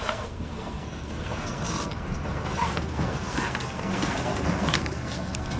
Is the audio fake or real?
fake